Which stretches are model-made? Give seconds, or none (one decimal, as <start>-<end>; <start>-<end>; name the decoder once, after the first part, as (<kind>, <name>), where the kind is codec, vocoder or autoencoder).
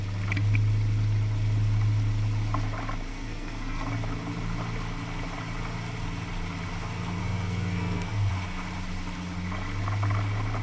3.1-3.9 (codec, SNAC); 7.2-8.3